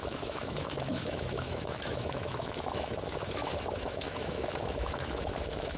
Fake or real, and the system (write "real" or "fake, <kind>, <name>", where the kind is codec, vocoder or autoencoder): fake, autoencoder, DAC-VAE